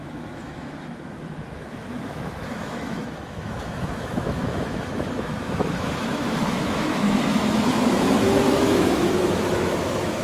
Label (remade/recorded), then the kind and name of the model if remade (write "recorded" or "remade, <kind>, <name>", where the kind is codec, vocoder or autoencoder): remade, autoencoder, DAC-VAE